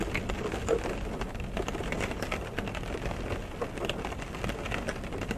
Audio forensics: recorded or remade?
recorded